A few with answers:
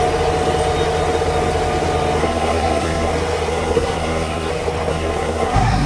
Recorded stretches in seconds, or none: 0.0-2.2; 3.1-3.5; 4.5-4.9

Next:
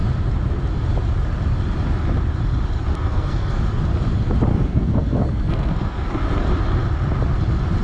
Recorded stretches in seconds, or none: 0.0-2.9; 3.6-4.5; 6.1-7.8

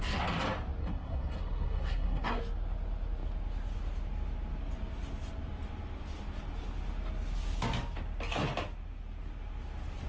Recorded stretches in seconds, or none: 0.0-0.8; 2.4-10.1

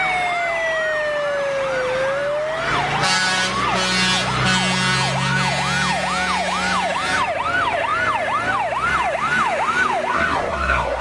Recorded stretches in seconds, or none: 0.0-10.1

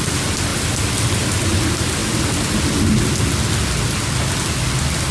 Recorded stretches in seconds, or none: 0.0-5.1

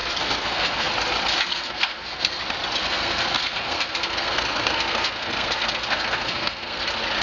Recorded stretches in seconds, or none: 0.9-1.5; 2.4-2.8; 6.8-7.2